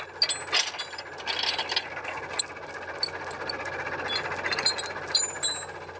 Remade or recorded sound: recorded